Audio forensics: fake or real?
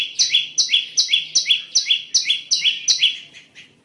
real